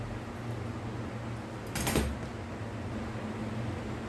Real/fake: real